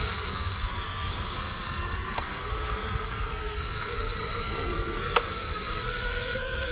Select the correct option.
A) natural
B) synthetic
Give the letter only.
B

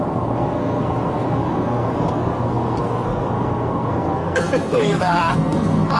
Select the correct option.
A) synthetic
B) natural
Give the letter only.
A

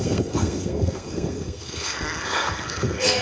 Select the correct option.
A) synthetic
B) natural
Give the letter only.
A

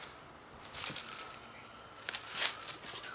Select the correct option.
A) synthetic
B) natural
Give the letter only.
B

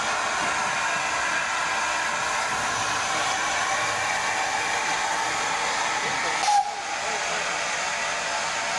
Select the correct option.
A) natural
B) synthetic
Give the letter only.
A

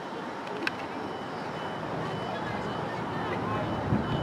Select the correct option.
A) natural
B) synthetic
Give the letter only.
A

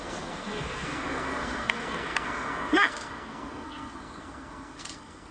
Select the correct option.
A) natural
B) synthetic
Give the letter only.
B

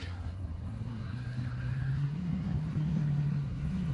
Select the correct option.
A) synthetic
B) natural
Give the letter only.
A